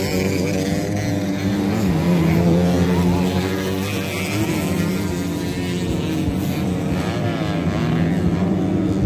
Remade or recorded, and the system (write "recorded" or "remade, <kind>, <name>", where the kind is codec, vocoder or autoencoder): recorded